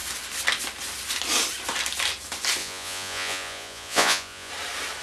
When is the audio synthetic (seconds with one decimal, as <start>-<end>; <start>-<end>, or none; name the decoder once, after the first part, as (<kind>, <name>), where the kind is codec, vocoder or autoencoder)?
2.6-4.5 (vocoder, Vocos)